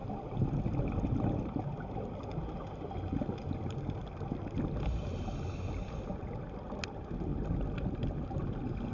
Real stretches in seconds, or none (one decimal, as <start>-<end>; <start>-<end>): 0.0-8.9